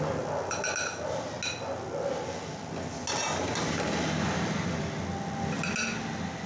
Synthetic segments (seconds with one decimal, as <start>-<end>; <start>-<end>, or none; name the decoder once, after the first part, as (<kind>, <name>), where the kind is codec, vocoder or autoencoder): none